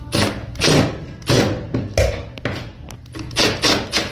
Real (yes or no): yes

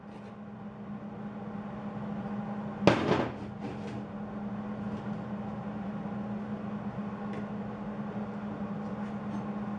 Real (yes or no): yes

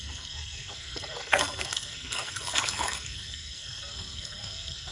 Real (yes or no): no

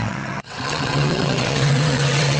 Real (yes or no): no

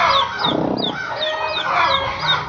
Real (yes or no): yes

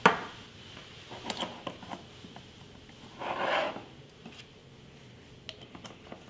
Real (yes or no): yes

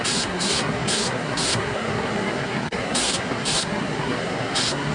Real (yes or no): no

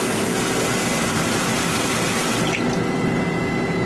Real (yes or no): yes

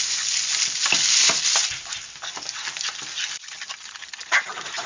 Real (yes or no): yes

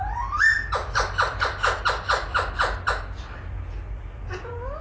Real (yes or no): yes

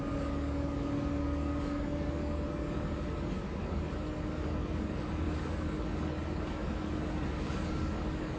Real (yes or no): no